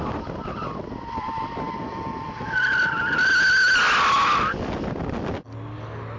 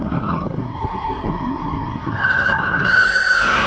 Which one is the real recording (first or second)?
first